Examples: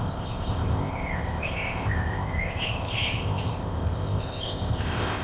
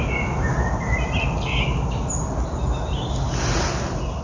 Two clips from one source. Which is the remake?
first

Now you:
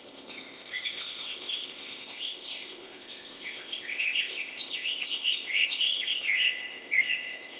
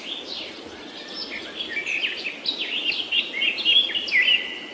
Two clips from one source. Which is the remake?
first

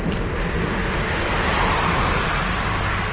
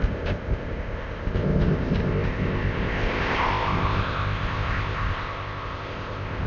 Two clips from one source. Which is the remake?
second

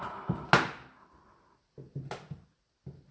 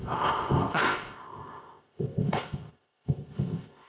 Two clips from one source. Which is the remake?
second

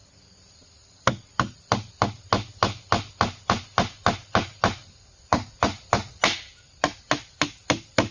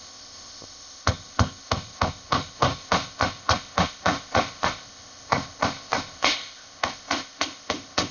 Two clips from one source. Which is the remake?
second